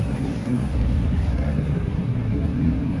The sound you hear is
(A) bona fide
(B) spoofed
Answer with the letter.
B